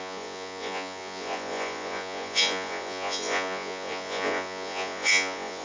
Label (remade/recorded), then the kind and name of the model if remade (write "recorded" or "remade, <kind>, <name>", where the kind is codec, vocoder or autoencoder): remade, vocoder, Vocos